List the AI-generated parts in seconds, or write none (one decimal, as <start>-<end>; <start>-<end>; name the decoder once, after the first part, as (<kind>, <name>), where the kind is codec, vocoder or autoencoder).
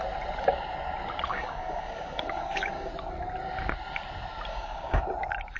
1.3-2.9 (codec, DAC); 4.5-5.0